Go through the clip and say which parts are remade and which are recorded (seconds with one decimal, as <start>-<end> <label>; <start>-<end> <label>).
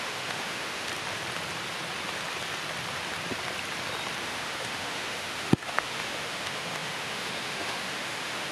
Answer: 0.0-0.9 remade; 0.9-4.2 recorded; 4.2-8.5 remade